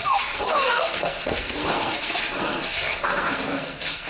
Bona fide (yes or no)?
no